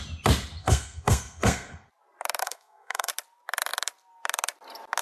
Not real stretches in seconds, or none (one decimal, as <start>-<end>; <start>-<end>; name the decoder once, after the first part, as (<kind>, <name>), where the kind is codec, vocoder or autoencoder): 0.6-1.9 (codec, SNAC); 2.4-3.1